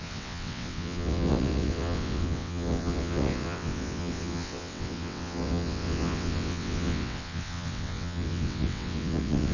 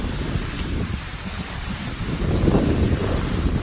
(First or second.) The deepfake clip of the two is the first